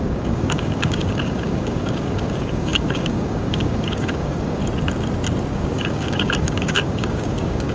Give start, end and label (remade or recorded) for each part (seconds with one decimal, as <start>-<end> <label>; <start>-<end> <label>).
0.0-4.6 remade; 4.6-5.5 recorded; 5.5-7.7 remade